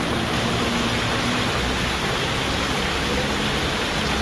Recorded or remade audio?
recorded